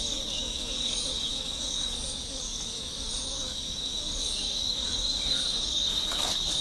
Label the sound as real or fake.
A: fake